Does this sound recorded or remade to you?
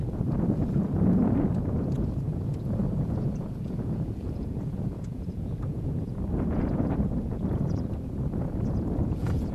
remade